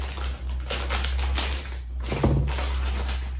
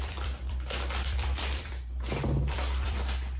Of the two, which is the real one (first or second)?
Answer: first